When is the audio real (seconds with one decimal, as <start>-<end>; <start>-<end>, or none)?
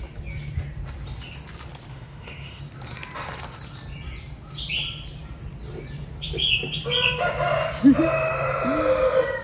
0.0-1.9; 2.6-9.4